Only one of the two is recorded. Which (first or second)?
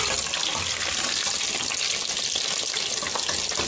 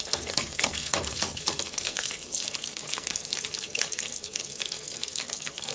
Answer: first